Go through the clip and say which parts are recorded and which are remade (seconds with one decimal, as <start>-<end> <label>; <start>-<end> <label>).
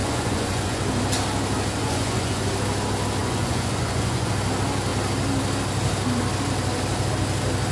0.0-0.8 remade; 0.8-1.8 recorded; 1.8-2.5 remade; 2.5-3.2 recorded; 3.2-4.3 remade; 4.3-7.7 recorded